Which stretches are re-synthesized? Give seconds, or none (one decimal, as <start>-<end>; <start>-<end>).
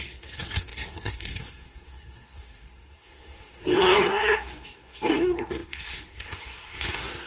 0.0-7.3